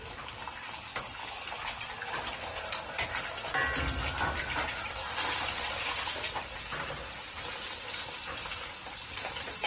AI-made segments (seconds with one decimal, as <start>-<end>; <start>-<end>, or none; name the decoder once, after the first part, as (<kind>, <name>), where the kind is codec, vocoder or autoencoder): 0.9-1.5 (codec, HILCodec)